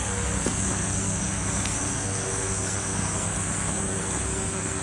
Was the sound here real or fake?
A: fake